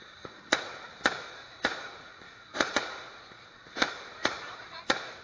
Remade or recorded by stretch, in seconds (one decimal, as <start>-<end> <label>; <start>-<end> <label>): 0.0-0.7 remade; 0.7-1.3 recorded; 1.3-5.2 remade